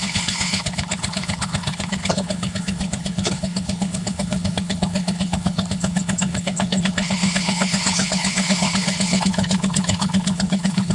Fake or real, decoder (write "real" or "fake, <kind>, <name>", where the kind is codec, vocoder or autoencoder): fake, codec, HILCodec